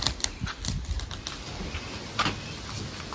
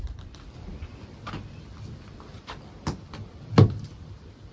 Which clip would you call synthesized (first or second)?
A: second